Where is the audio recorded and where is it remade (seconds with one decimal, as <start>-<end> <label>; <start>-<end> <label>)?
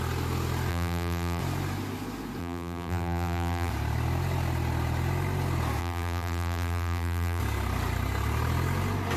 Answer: 0.0-0.7 recorded; 0.7-1.4 remade; 1.4-2.4 recorded; 2.4-3.7 remade; 3.7-5.8 recorded; 5.8-7.4 remade; 7.4-9.2 recorded